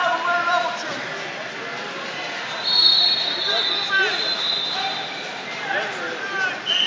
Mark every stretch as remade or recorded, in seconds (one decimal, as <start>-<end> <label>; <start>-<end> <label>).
0.0-6.9 recorded